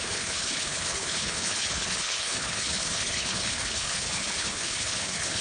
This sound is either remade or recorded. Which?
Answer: remade